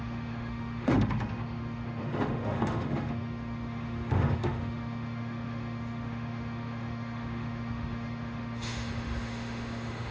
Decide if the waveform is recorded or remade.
remade